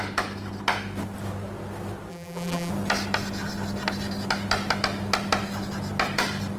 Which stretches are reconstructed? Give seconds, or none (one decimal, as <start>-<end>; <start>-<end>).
2.1-2.7